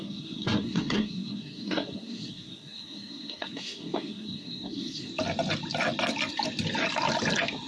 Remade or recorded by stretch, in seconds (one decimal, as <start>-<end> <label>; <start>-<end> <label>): 0.0-5.1 remade; 5.1-7.7 recorded